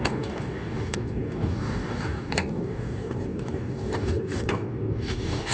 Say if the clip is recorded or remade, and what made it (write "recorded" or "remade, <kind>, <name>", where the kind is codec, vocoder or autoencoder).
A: remade, codec, DAC